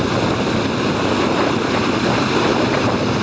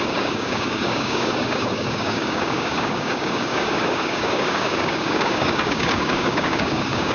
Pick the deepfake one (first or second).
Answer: second